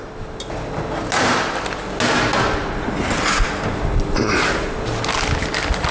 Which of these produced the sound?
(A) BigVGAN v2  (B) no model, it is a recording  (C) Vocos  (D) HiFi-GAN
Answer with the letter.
B